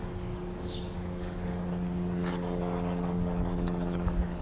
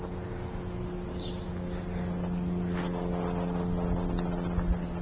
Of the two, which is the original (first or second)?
second